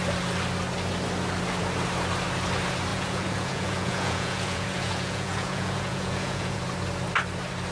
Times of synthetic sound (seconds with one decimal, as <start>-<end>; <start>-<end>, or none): 2.9-6.6